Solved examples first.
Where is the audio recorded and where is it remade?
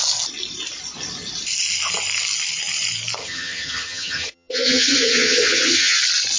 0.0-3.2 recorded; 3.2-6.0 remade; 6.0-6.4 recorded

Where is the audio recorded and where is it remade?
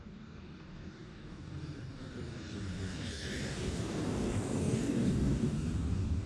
0.0-6.3 remade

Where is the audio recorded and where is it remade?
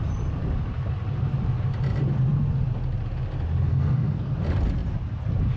0.0-3.7 recorded; 3.7-4.2 remade; 4.2-5.6 recorded